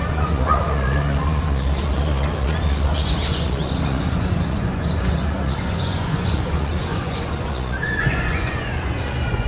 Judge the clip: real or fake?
fake